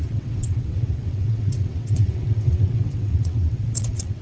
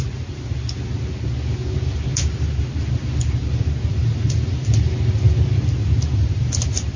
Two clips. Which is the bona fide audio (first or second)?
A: second